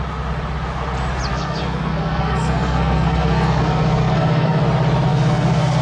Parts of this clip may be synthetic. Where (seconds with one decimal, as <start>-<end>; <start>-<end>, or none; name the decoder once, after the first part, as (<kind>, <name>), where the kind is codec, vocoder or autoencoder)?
1.3-4.6 (codec, SNAC); 5.1-5.8